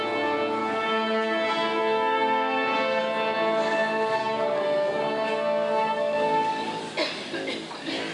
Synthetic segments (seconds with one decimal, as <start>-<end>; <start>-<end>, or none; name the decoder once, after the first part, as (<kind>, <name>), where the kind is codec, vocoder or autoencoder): 0.6-3.0 (codec, DAC); 4.2-6.8